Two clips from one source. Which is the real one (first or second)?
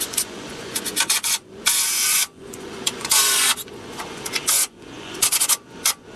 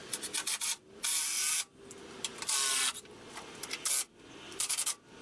second